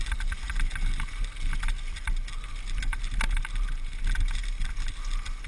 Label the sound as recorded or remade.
recorded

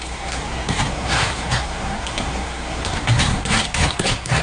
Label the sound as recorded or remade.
remade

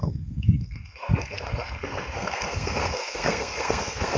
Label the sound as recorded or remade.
remade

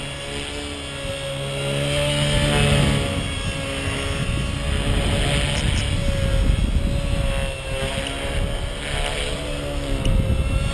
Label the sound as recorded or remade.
recorded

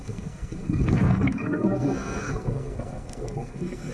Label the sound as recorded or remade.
remade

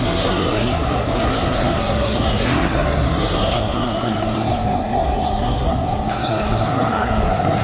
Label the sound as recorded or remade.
remade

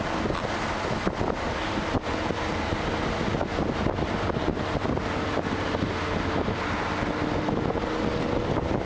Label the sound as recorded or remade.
recorded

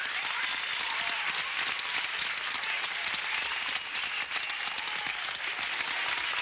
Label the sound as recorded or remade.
recorded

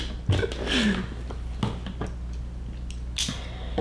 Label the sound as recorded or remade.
recorded